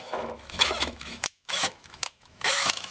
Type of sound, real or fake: fake